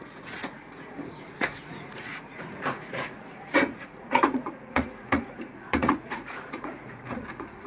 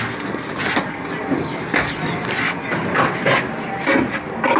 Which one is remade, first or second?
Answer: first